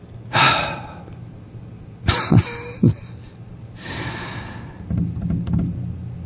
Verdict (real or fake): real